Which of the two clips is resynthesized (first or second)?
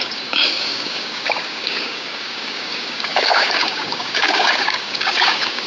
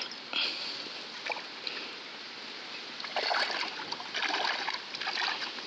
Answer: first